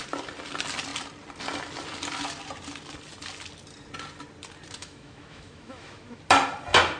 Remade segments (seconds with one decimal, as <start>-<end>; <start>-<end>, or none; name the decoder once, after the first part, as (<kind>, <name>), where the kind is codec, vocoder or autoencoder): 4.8-6.2 (autoencoder, DAC-VAE)